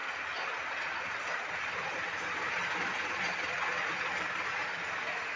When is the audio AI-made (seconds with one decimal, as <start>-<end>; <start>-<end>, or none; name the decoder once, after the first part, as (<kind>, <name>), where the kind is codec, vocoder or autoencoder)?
none